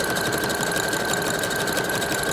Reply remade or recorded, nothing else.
remade